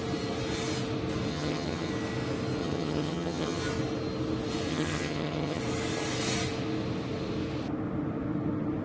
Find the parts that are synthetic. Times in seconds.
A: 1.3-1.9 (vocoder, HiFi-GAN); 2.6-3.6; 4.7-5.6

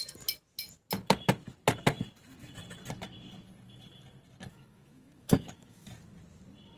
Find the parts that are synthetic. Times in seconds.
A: 4.5-5.9 (autoencoder, DAC-VAE)

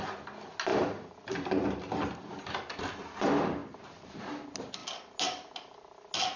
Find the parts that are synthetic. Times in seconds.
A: 0.7-2.9 (vocoder, BigVGAN v2); 3.6-4.2

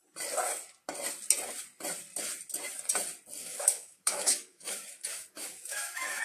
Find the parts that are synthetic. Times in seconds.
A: 3.4-6.2 (autoencoder, DAC-VAE)

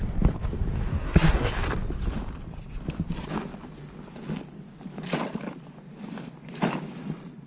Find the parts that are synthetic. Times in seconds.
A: 0.9-1.5 (codec, SNAC)